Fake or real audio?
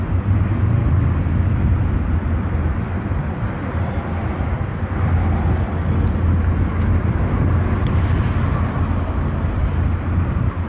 real